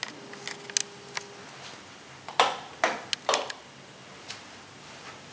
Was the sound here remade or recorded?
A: recorded